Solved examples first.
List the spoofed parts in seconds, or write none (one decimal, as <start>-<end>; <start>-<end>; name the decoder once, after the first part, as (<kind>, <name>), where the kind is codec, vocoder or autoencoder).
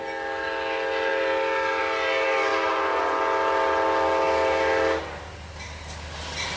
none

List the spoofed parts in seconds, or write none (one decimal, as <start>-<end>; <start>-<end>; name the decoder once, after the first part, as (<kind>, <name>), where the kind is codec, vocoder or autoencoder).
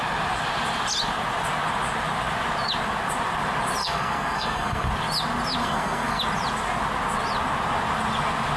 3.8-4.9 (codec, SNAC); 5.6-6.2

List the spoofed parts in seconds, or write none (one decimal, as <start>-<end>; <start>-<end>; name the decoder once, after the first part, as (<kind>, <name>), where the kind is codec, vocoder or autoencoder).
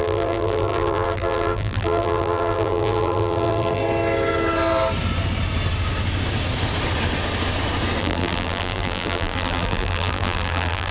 0.0-3.8 (vocoder, BigVGAN v2); 8.0-10.9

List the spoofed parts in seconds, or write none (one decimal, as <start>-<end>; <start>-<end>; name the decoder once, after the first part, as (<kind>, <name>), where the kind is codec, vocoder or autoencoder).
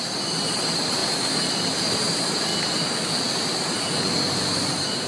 0.0-2.5 (vocoder, BigVGAN v2); 3.4-5.1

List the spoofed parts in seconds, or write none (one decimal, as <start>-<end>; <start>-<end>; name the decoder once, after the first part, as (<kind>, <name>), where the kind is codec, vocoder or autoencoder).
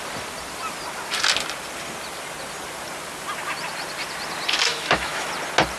4.7-5.3 (autoencoder, DAC-VAE)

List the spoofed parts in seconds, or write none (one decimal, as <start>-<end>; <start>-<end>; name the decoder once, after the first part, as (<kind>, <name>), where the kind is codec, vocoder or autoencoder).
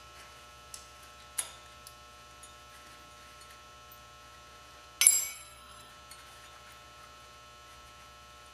5.3-5.9 (codec, SNAC)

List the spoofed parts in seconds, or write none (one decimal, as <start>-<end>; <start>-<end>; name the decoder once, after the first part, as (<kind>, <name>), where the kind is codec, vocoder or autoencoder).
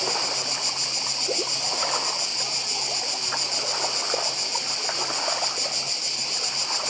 none